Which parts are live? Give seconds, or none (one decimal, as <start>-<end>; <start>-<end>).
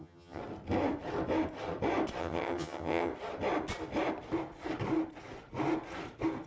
0.4-2.2; 3.1-6.5